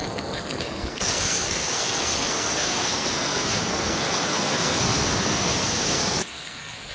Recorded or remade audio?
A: remade